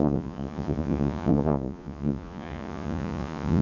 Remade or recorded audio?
remade